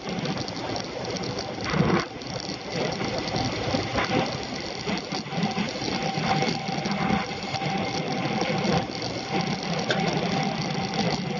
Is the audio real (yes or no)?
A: yes